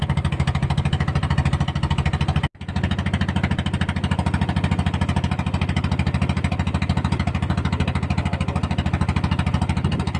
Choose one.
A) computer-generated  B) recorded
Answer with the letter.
B